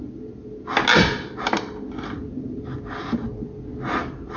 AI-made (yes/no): no